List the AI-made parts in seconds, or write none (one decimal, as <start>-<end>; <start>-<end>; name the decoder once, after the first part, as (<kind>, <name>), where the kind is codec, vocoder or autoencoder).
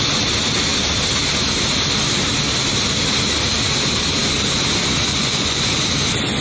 5.1-5.9 (vocoder, Vocos)